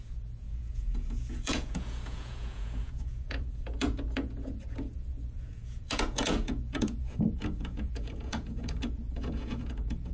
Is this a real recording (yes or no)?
no